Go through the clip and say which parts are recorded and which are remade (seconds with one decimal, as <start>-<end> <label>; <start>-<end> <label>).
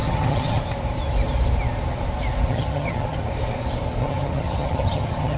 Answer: 0.0-0.6 remade; 0.6-2.5 recorded; 2.5-3.2 remade; 3.2-4.0 recorded; 4.0-5.4 remade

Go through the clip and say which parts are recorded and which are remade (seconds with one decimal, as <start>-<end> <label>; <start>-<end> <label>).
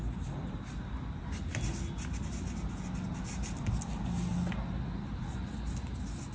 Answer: 0.0-6.3 recorded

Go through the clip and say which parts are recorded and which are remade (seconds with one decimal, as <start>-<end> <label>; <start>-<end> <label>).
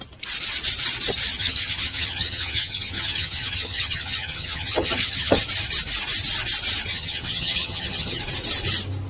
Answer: 0.0-1.4 recorded; 1.4-5.4 remade; 5.4-6.9 recorded; 6.9-8.2 remade; 8.2-9.1 recorded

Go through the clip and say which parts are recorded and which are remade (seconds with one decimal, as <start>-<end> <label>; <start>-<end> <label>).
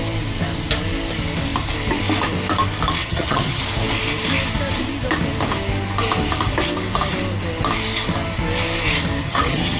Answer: 0.0-3.0 recorded; 3.0-3.6 remade; 3.6-9.2 recorded; 9.2-9.8 remade